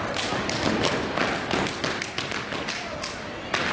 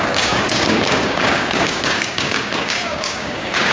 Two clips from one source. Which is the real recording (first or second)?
first